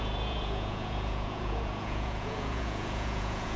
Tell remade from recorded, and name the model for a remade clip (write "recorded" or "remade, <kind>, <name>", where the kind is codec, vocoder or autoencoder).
remade, vocoder, Vocos